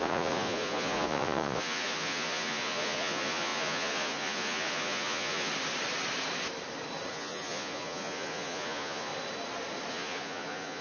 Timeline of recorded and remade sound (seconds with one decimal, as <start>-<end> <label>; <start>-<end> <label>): 0.0-5.5 remade; 5.5-7.1 recorded; 7.1-9.1 remade; 9.1-9.9 recorded; 9.9-10.8 remade